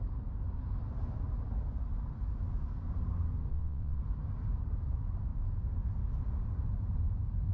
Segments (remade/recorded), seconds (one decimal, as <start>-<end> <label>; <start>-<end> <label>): 0.0-3.5 recorded; 3.5-4.0 remade; 4.0-7.5 recorded